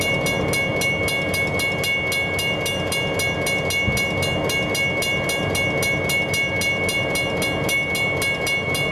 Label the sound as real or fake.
real